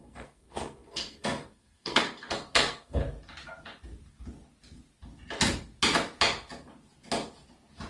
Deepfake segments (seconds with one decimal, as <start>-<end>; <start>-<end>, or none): 0.0-3.0